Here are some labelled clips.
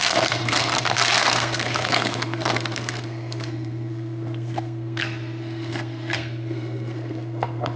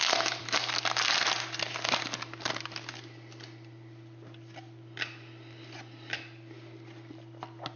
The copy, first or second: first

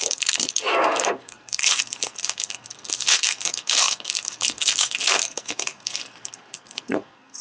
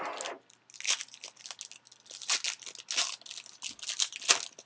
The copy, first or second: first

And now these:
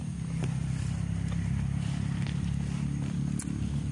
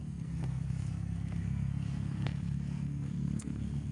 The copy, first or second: second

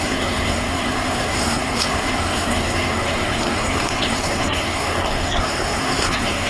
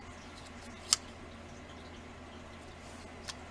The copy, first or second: first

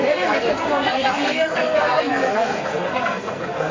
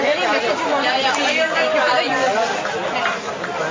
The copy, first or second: first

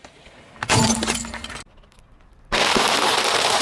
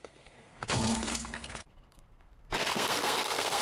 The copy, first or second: second